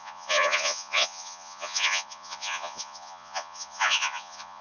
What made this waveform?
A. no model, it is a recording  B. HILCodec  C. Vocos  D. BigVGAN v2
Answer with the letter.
C